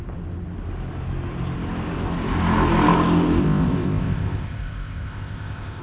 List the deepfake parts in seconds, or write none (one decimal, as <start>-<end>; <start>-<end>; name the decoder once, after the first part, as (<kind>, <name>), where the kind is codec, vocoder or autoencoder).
3.4-5.8 (codec, ZipCodec)